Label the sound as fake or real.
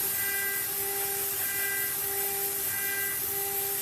real